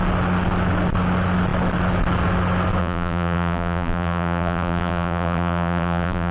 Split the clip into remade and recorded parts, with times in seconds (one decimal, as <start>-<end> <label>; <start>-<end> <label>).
0.0-2.8 recorded; 2.8-6.3 remade